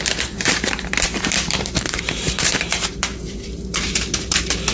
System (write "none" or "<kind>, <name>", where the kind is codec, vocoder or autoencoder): vocoder, BigVGAN v2